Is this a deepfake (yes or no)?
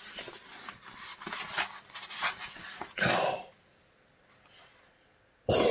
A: no